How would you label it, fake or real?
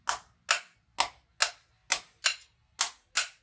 real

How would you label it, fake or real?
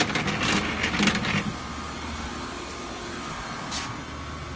real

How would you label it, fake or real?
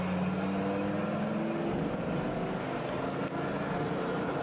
real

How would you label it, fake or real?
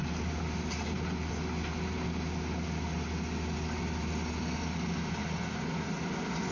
real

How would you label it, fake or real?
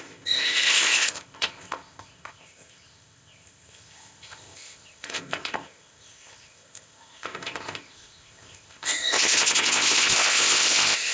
fake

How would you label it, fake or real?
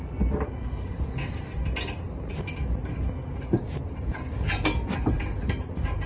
real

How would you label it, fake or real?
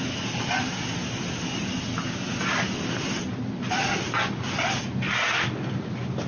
real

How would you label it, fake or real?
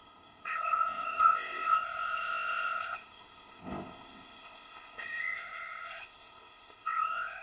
fake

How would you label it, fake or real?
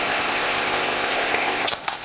fake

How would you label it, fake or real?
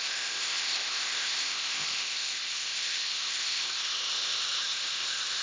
fake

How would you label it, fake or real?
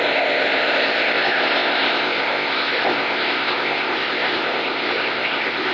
fake